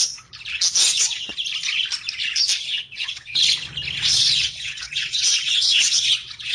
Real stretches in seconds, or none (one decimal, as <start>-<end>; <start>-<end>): 0.0-0.8; 1.3-2.6; 3.4-4.0